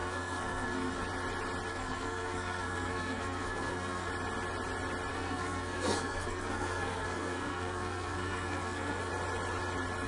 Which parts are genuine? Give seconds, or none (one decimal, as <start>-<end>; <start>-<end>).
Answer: 1.0-1.7; 4.1-5.1; 9.1-10.1